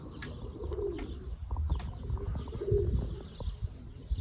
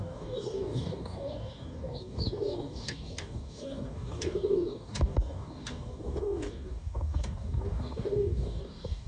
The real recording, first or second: first